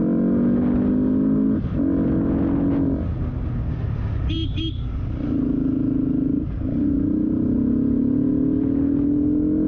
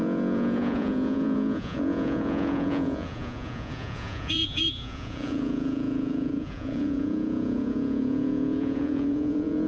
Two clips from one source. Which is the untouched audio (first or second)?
first